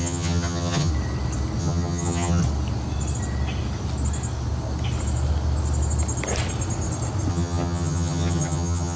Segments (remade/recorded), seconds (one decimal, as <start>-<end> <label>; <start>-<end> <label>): 0.0-0.9 remade; 0.9-1.6 recorded; 1.6-2.4 remade; 2.4-7.3 recorded; 7.3-9.0 remade